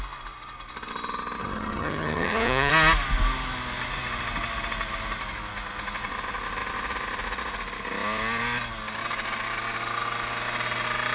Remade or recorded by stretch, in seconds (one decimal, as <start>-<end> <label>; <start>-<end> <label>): 0.0-1.4 recorded; 1.4-2.7 remade; 2.7-11.1 recorded

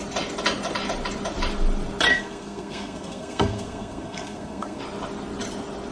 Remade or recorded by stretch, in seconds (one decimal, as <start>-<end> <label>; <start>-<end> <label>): 0.0-2.1 recorded; 2.1-4.8 remade; 4.8-5.9 recorded

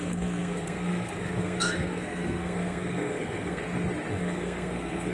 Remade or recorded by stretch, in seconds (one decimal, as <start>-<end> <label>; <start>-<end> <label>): 0.0-3.6 remade; 3.6-4.1 recorded; 4.1-5.1 remade

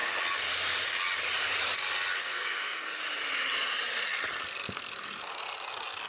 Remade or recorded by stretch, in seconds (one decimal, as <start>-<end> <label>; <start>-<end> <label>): 0.0-2.2 recorded; 2.2-3.0 remade; 3.0-6.1 recorded

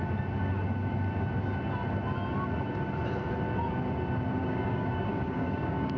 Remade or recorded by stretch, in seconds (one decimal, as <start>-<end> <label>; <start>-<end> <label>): 0.0-4.4 recorded; 4.4-6.0 remade

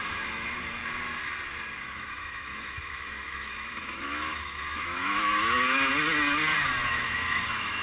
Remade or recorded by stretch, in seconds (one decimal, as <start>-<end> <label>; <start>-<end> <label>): 0.0-0.8 remade; 0.8-1.8 recorded; 1.8-5.9 remade; 5.9-6.9 recorded; 6.9-7.8 remade

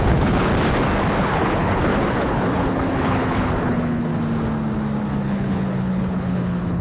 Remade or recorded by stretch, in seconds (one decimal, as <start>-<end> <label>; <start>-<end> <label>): 0.0-0.5 remade; 0.5-1.2 recorded; 1.2-4.1 remade; 4.1-5.0 recorded; 5.0-6.8 remade